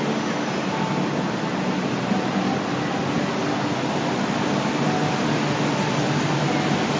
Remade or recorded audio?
recorded